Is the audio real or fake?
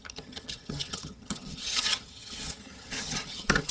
fake